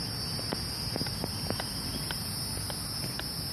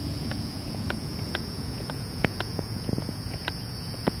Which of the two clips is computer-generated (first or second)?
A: second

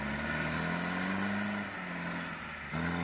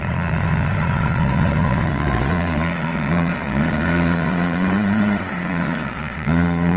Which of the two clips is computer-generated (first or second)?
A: second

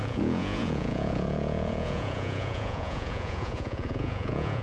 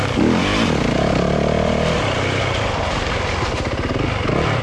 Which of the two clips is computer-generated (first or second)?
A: first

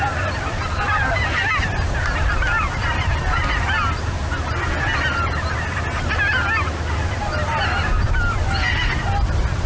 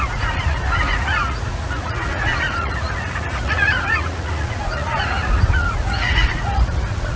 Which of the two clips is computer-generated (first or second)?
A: second